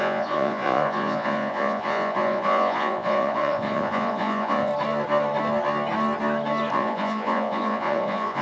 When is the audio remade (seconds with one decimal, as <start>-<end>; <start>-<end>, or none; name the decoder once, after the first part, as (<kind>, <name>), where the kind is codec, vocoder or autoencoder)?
0.0-4.7 (vocoder, Vocos); 6.7-8.4